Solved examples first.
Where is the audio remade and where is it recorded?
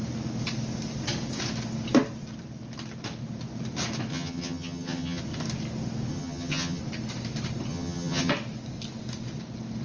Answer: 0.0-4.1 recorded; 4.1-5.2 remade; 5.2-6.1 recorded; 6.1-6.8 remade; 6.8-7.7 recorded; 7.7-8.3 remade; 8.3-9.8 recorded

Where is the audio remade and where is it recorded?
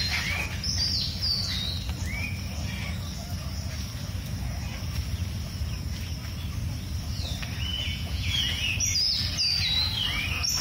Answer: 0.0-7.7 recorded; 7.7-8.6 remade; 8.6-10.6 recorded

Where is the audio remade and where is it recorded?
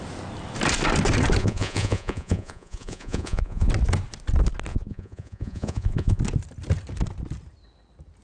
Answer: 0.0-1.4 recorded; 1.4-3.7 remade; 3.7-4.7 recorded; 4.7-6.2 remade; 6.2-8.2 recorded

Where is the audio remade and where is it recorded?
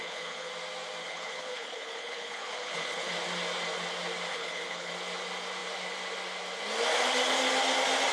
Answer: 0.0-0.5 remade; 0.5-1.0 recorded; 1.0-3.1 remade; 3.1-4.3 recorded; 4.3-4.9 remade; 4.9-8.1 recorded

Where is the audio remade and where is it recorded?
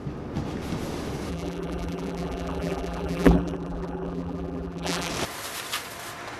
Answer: 0.0-1.3 recorded; 1.3-5.1 remade; 5.1-6.4 recorded